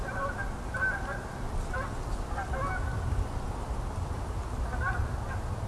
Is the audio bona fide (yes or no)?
yes